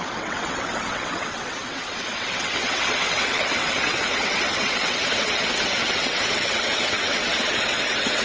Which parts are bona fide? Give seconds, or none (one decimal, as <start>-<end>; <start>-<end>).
none